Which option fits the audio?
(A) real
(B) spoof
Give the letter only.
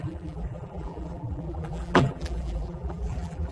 B